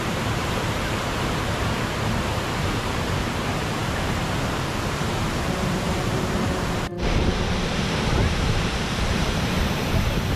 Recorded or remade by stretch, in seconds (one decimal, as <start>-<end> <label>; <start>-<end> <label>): 0.0-10.4 remade